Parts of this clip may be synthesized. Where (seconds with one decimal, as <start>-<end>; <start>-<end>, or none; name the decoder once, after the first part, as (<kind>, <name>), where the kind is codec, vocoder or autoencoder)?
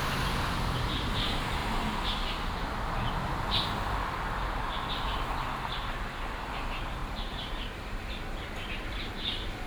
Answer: 7.0-8.0 (vocoder, BigVGAN v2)